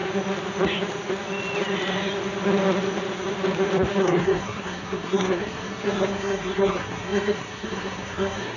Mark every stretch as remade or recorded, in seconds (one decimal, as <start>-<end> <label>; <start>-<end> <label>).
0.0-4.0 recorded; 4.0-8.6 remade